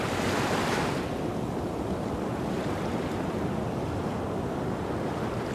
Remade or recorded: recorded